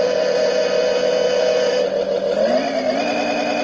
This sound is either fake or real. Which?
real